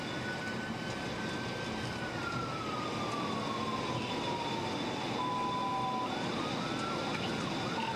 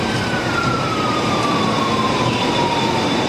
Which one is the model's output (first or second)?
second